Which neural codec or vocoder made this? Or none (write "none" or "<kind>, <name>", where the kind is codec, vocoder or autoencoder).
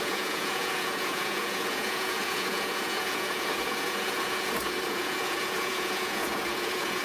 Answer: vocoder, Vocos